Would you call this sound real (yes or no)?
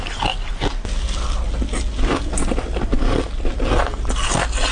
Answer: yes